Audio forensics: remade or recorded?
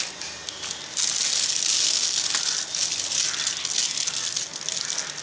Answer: recorded